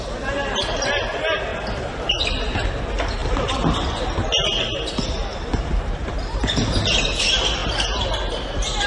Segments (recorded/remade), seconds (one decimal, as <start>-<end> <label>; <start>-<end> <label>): 0.0-8.9 recorded